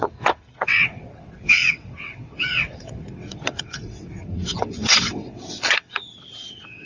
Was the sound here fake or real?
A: fake